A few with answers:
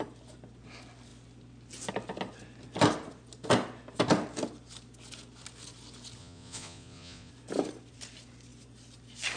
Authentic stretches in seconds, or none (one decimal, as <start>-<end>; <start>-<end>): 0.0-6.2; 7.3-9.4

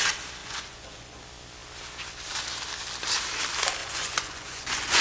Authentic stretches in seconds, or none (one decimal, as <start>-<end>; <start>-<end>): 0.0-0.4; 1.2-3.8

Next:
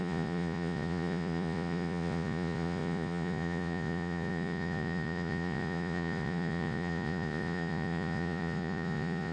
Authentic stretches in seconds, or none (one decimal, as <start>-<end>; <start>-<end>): none

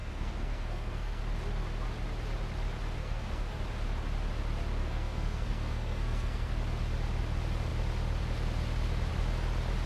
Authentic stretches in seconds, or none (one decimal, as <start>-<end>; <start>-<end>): 1.2-3.0; 3.6-4.8; 6.5-9.9

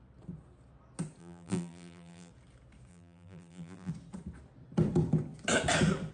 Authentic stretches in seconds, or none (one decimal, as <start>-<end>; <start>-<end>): 0.0-1.2; 2.3-2.9; 3.9-6.1

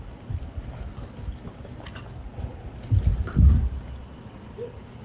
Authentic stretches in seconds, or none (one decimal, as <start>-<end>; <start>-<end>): 0.0-5.0

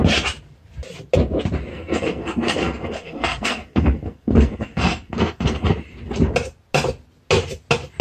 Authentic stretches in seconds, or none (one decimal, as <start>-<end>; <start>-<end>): 0.0-1.7; 5.7-8.0